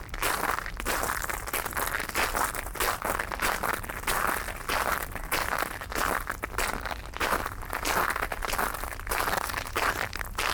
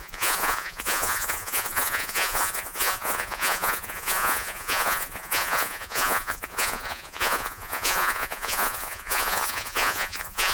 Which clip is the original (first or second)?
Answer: first